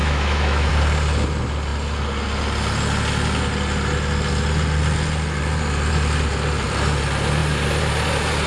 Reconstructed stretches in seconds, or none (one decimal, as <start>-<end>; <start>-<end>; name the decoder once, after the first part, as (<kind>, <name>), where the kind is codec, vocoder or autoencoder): 0.0-0.7 (autoencoder, DAC-VAE)